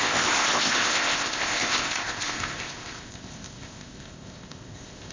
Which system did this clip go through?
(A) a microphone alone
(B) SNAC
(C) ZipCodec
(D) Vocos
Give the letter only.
C